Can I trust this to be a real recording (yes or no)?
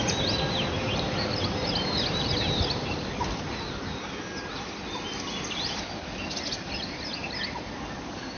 yes